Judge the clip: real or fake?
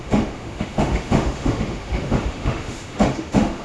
fake